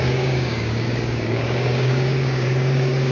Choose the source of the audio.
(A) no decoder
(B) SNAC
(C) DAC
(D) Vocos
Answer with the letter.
C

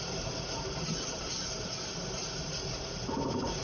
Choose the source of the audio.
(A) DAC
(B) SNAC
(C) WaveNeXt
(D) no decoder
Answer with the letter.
D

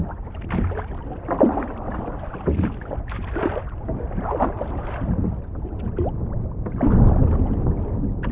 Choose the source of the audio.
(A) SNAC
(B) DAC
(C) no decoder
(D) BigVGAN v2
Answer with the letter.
C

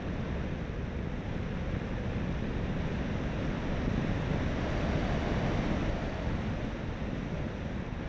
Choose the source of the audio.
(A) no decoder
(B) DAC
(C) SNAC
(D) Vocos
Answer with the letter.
A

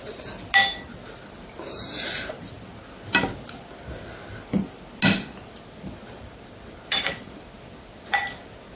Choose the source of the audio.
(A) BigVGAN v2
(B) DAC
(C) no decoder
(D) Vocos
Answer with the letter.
C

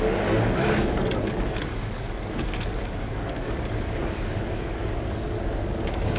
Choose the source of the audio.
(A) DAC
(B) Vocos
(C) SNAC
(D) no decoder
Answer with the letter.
A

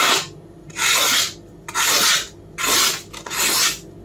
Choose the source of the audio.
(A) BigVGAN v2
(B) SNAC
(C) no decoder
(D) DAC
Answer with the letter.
C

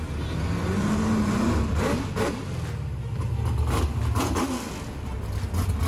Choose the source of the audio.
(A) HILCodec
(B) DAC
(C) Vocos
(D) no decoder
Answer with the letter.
D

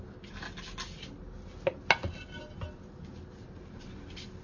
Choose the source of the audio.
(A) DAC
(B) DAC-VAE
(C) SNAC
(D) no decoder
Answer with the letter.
D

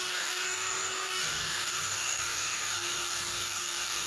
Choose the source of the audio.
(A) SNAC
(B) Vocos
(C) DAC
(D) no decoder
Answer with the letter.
C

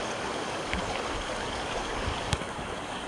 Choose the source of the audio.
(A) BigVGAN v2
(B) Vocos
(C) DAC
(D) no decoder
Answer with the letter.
C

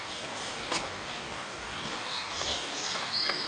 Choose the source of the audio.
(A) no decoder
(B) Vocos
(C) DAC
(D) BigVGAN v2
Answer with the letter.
C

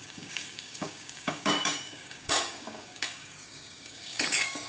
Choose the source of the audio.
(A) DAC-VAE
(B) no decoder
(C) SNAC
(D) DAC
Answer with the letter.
D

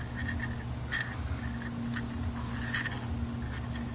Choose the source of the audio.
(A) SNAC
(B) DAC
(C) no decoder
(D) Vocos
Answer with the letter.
C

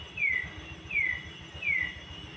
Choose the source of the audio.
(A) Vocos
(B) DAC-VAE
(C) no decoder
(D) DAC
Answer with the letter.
C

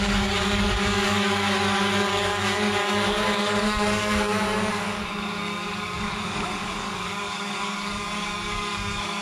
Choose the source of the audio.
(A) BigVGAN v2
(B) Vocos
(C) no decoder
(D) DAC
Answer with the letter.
D